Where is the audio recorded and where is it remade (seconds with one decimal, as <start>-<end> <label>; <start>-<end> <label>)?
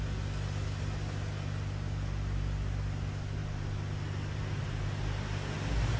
0.0-6.0 recorded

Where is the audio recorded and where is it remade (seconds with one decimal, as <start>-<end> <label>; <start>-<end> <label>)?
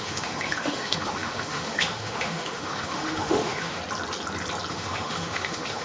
0.0-3.8 remade; 3.8-4.7 recorded; 4.7-5.8 remade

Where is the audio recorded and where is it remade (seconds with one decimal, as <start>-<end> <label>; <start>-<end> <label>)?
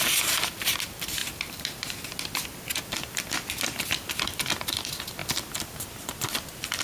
0.0-6.8 remade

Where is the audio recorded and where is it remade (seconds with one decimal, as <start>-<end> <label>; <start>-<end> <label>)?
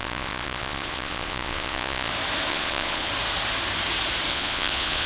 0.0-2.1 remade; 2.1-2.5 recorded; 2.5-3.1 remade; 3.1-4.3 recorded; 4.3-5.1 remade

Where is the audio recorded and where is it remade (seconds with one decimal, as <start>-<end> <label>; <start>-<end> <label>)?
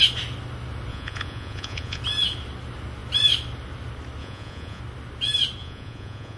0.0-0.9 recorded; 0.9-2.0 remade; 2.0-4.2 recorded; 4.2-4.8 remade; 4.8-5.6 recorded; 5.6-6.4 remade